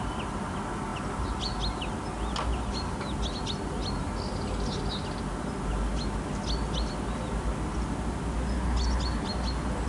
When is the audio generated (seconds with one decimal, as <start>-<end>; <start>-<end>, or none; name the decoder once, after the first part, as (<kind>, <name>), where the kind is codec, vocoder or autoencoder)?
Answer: none

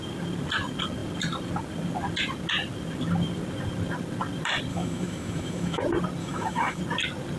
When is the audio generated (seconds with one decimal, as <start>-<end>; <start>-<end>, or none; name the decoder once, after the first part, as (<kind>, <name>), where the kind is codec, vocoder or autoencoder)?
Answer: 4.7-5.8 (autoencoder, DAC-VAE); 6.2-6.8

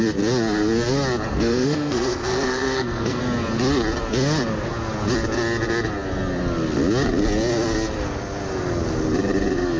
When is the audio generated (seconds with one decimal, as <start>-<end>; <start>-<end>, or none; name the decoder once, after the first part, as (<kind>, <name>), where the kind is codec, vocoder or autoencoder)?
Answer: 1.3-3.2 (codec, SNAC)

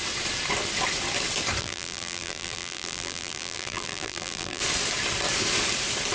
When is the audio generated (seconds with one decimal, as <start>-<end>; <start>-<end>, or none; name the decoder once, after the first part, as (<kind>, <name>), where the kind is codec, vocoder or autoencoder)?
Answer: 1.6-4.6 (vocoder, BigVGAN v2)

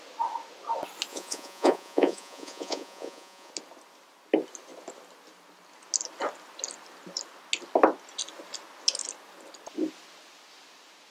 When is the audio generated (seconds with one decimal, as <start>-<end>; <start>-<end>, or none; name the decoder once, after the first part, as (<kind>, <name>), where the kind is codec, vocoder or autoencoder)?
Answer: 1.1-3.5 (vocoder, Vocos)

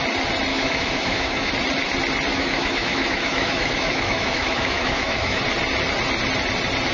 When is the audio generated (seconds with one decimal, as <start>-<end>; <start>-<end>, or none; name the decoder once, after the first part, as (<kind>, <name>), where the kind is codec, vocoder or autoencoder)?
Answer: 0.5-1.5 (autoencoder, DAC-VAE); 2.3-5.4

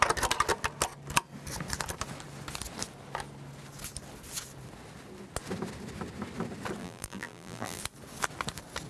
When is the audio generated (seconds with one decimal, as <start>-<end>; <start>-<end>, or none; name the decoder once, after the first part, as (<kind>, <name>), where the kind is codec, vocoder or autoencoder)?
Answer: 6.8-7.8 (vocoder, BigVGAN v2)

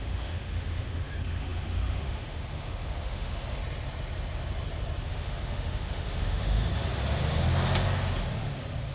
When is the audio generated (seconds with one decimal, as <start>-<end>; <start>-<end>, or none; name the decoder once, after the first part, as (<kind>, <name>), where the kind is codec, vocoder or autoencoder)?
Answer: 0.0-3.6 (autoencoder, DAC-VAE); 5.1-6.7